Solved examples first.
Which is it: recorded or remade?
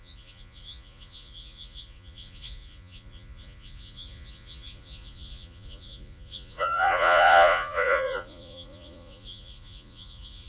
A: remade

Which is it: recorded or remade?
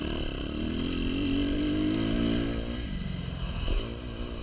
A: recorded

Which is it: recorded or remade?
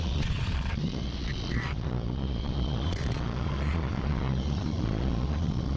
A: remade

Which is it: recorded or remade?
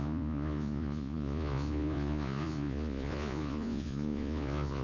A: remade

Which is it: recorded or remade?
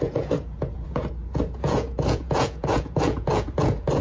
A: remade